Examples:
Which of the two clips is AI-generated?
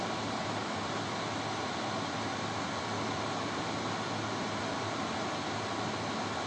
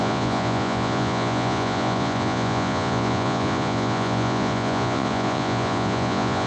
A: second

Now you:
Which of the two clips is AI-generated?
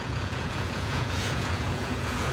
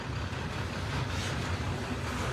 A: first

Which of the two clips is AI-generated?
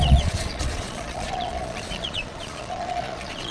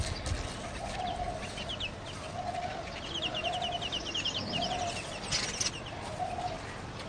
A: first